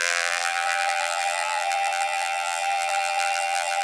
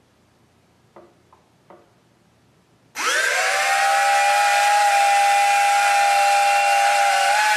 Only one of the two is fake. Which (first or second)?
first